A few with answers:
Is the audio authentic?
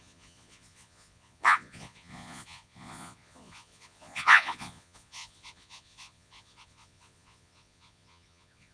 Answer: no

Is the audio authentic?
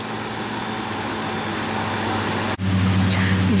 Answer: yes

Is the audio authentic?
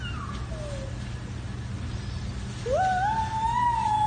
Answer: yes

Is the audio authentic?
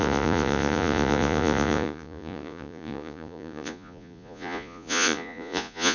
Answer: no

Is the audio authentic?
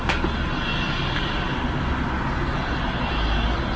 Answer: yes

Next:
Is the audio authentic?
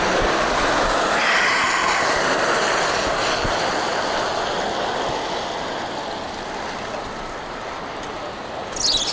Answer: yes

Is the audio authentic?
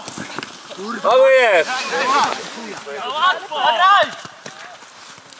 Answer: yes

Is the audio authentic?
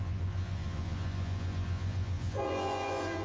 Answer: no